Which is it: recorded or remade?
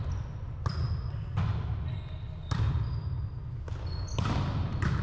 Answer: recorded